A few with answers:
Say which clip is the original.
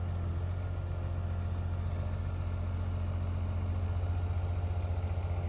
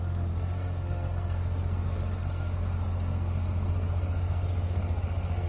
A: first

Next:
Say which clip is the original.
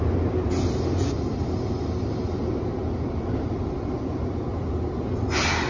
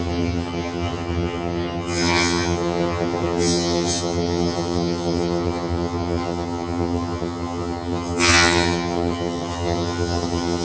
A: first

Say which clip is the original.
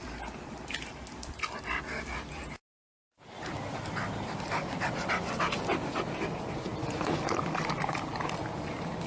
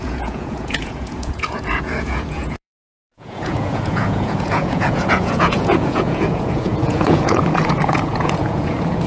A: first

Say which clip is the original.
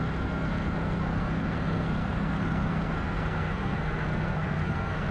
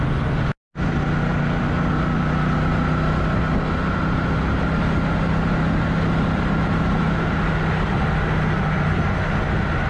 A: second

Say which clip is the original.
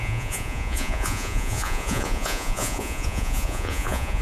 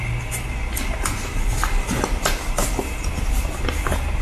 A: second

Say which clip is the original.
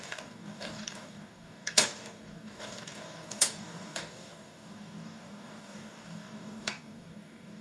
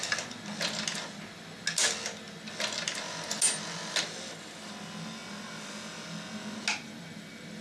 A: second